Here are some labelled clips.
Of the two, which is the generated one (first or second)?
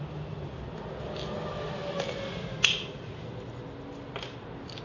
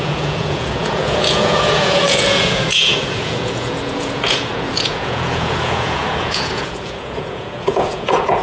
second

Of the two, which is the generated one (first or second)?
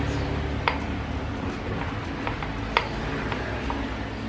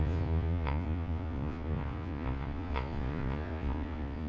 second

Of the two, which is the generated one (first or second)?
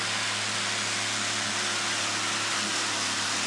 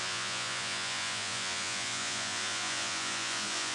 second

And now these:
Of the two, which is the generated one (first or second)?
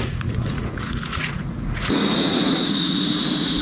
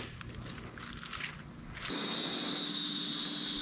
first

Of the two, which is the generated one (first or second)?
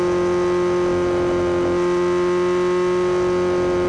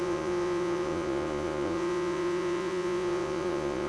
second